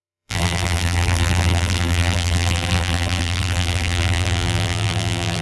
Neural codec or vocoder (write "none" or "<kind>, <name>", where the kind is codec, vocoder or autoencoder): vocoder, BigVGAN v2